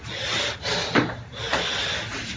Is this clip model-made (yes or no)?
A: no